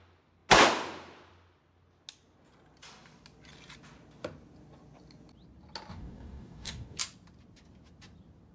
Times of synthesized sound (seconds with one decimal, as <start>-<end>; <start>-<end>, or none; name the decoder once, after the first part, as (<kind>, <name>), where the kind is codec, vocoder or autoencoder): 5.9-7.0 (codec, DAC)